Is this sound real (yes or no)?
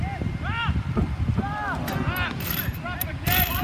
yes